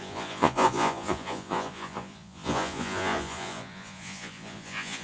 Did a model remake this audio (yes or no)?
yes